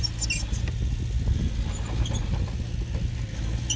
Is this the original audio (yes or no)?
yes